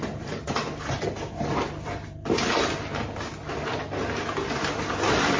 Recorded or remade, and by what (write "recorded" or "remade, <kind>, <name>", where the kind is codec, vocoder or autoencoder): recorded